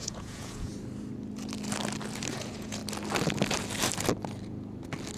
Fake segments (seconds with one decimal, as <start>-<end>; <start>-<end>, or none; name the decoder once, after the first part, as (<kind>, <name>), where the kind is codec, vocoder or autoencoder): 0.0-0.7 (vocoder, Vocos); 2.3-2.8